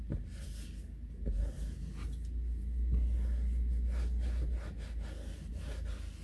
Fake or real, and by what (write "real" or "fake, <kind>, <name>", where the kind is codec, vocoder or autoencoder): real